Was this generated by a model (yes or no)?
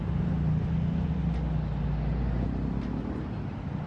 no